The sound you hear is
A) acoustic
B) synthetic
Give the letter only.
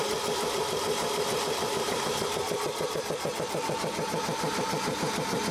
B